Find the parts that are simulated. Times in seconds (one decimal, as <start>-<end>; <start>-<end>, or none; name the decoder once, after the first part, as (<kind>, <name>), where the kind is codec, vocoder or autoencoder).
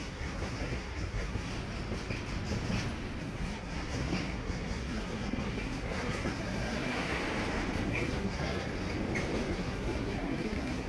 0.0-1.5 (codec, SNAC); 3.2-7.2; 7.9-8.7; 9.5-10.9